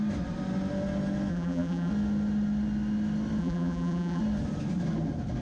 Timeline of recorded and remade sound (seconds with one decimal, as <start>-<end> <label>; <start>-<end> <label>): 0.0-1.3 recorded; 1.3-1.9 remade; 1.9-3.4 recorded; 3.4-4.2 remade; 4.2-5.4 recorded